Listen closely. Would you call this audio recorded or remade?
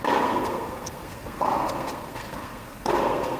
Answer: remade